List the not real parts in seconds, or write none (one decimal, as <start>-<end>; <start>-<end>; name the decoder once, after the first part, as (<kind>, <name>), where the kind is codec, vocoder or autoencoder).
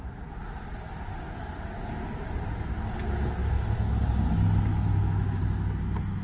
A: 3.4-4.0 (autoencoder, DAC-VAE); 4.7-5.4